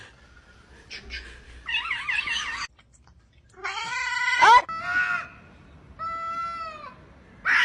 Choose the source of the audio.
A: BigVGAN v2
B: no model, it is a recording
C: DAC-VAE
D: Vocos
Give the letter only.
B